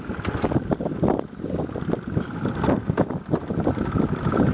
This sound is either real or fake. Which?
real